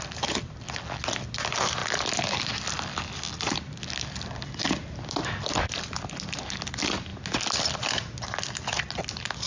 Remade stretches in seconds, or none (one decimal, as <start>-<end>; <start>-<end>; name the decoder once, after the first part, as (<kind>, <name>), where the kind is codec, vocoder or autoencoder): none